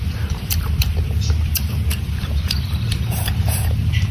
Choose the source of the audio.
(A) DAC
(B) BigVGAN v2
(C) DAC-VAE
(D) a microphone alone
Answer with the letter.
B